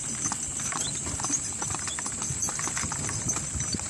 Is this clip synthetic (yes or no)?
no